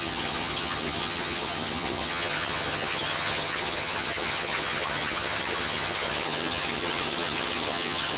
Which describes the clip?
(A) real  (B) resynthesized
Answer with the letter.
B